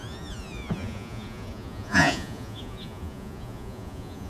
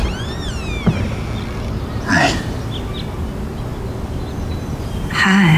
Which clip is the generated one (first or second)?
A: first